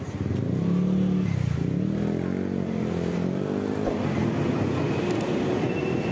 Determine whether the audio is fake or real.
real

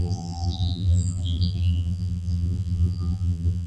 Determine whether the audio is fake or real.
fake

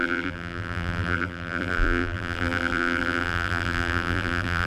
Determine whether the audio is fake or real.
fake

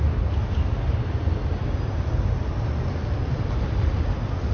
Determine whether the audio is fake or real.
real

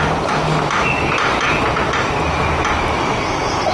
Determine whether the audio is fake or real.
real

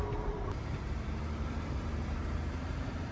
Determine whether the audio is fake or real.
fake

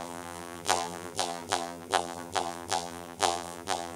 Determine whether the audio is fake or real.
fake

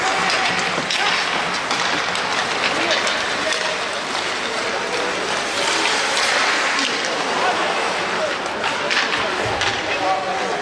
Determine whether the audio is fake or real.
real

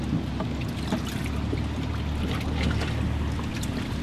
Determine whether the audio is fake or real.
real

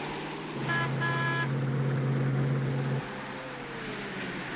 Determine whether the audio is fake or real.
real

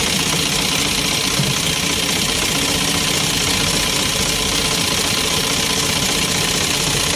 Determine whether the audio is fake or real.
real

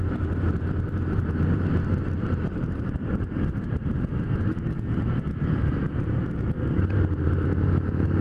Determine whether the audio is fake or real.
fake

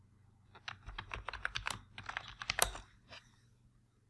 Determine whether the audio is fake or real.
real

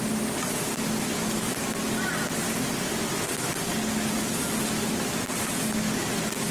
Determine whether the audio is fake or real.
real